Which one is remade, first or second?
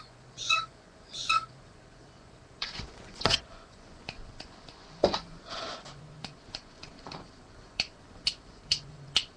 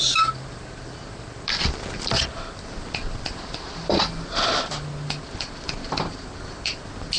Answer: first